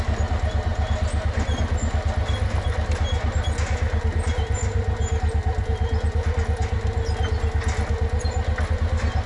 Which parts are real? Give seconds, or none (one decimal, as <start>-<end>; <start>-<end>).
0.0-9.3